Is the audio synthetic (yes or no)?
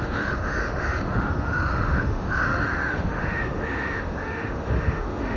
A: yes